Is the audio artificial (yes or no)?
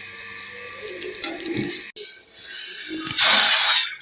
no